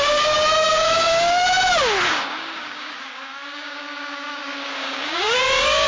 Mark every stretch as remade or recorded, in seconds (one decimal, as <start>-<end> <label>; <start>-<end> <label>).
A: 0.0-1.4 remade; 1.4-2.1 recorded; 2.1-5.9 remade